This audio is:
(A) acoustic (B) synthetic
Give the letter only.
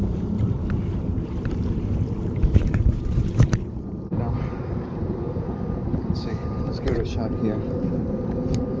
B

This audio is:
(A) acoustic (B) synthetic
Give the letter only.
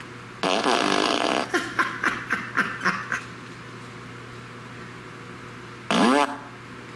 A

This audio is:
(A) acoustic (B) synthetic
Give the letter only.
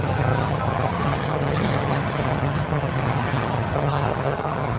B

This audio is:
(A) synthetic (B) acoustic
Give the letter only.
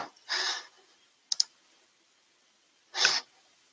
B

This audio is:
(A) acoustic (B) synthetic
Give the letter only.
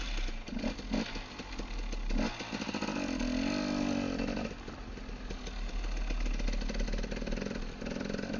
A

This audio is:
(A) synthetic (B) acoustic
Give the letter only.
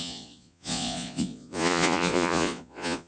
A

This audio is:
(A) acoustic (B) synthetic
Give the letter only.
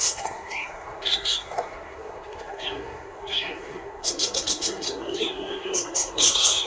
B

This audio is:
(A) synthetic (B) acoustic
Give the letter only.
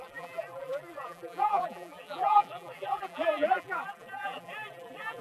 A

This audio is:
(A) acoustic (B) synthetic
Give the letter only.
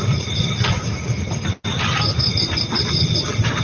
A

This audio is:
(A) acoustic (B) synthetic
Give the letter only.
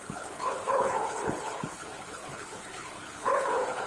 B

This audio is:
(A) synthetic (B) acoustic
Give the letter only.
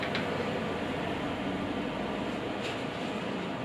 B